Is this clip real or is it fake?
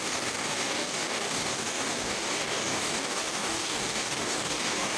fake